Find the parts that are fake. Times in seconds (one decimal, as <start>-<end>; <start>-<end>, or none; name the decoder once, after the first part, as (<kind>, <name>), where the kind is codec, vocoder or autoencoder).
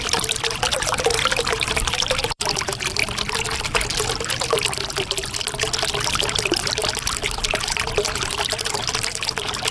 0.0-3.0 (vocoder, BigVGAN v2); 6.1-6.8; 7.4-9.7